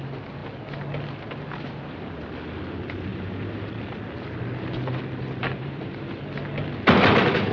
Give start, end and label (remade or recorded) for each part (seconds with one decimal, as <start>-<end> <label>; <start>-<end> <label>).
0.0-3.1 recorded; 3.1-3.7 remade; 3.7-5.4 recorded; 5.4-6.2 remade; 6.2-7.5 recorded